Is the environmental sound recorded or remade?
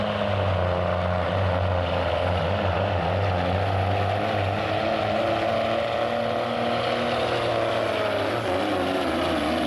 recorded